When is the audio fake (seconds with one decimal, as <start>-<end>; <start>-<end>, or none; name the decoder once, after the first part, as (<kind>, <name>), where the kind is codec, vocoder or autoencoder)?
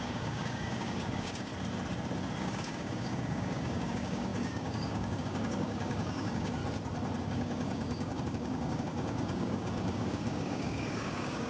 0.0-1.5 (codec, DAC); 2.4-6.6; 7.2-11.5